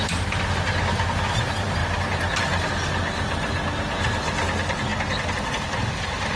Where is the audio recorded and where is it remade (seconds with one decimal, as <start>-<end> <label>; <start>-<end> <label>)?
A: 0.0-6.4 recorded